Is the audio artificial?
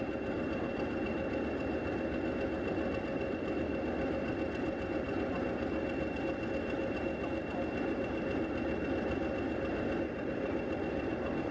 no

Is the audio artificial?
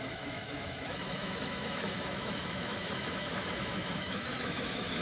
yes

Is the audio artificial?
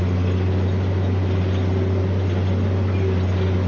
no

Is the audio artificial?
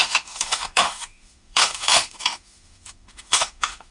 yes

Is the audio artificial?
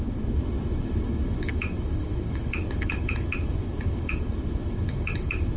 yes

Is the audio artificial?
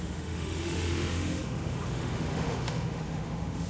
yes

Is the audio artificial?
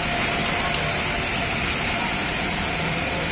no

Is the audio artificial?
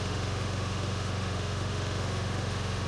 yes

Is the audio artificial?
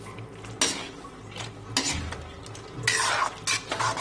no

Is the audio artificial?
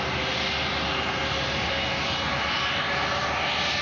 no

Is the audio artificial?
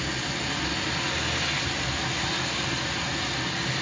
no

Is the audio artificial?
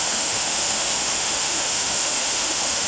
yes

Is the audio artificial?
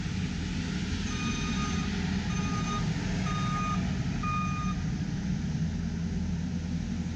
no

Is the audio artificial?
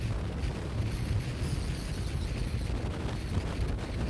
no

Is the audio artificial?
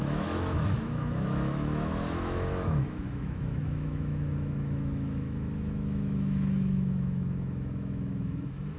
yes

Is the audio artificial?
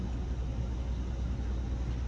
no